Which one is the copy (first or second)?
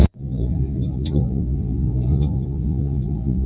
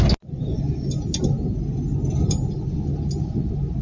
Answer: first